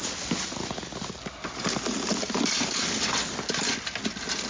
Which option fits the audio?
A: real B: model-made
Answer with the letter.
A